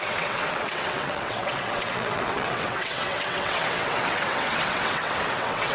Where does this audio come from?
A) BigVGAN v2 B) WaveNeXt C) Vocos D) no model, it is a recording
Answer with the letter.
B